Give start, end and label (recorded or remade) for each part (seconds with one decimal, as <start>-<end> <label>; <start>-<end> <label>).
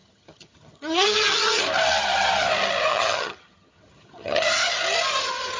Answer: 0.0-1.6 remade; 1.6-2.9 recorded; 2.9-4.7 remade; 4.7-5.6 recorded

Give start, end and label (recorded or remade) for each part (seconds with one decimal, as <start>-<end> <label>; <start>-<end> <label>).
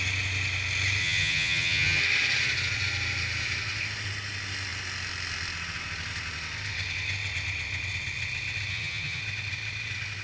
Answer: 0.0-1.0 recorded; 1.0-2.0 remade; 2.0-8.7 recorded; 8.7-9.2 remade; 9.2-10.2 recorded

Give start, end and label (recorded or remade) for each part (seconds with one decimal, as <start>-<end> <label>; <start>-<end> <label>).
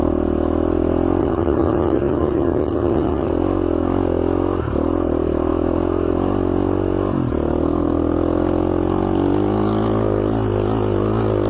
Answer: 0.0-1.2 recorded; 1.2-3.3 remade; 3.3-11.5 recorded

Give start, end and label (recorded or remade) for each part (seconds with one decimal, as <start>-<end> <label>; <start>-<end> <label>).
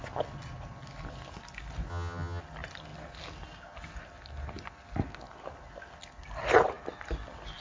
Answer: 0.0-1.9 recorded; 1.9-2.4 remade; 2.4-7.6 recorded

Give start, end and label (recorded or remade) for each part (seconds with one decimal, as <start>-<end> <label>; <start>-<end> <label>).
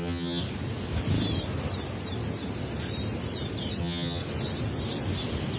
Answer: 0.0-0.4 remade; 0.4-3.8 recorded; 3.8-4.2 remade; 4.2-5.6 recorded